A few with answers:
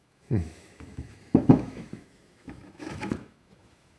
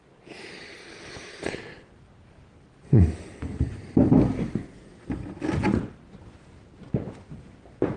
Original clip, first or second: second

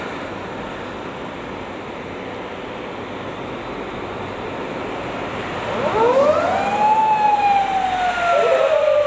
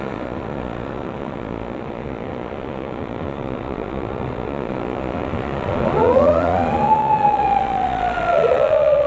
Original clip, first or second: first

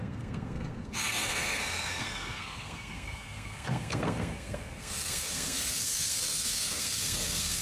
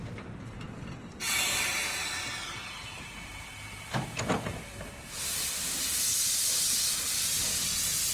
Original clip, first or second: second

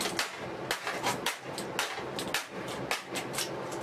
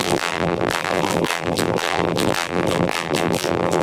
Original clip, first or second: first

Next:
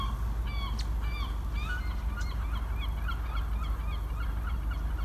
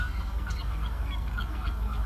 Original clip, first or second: first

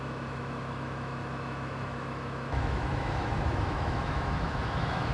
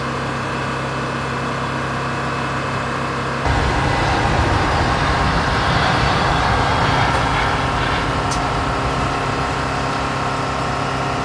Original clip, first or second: second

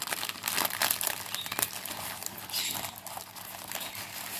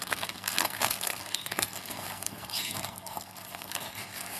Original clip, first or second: first